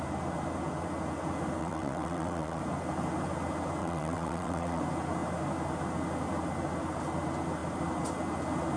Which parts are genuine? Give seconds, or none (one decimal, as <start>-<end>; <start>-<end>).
0.0-1.6; 2.6-3.8; 4.8-8.8